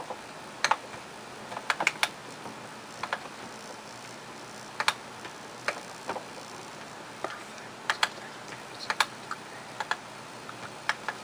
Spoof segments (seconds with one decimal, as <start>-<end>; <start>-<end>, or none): none